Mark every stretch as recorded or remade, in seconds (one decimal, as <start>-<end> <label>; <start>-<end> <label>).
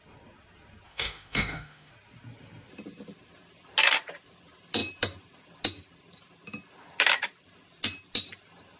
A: 0.0-0.9 recorded; 0.9-1.9 remade; 1.9-8.8 recorded